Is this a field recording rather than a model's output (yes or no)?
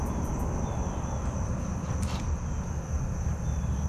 yes